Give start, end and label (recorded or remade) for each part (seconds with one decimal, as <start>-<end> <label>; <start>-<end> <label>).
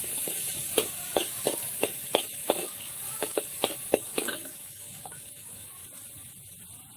0.0-5.8 remade; 5.8-7.0 recorded